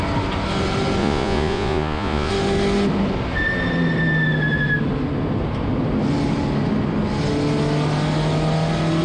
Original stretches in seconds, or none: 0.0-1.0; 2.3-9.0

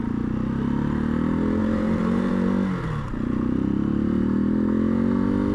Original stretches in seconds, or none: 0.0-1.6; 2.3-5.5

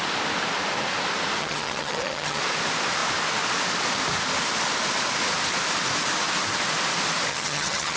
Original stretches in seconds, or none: 0.0-1.4; 2.4-7.3